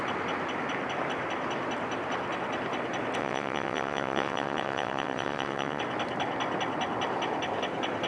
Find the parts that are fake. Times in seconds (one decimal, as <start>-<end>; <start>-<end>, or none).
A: 3.2-5.8